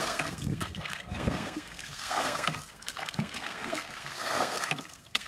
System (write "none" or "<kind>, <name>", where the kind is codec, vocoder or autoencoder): codec, SNAC